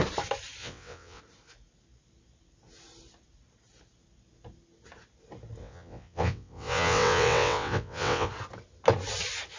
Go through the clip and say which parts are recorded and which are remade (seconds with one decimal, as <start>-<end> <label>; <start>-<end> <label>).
0.0-0.6 recorded; 0.6-1.2 remade; 1.2-5.6 recorded; 5.6-8.3 remade; 8.3-9.6 recorded